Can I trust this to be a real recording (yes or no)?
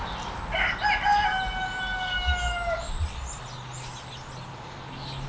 yes